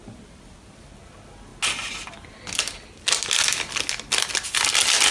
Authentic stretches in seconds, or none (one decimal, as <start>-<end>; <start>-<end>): 0.0-5.1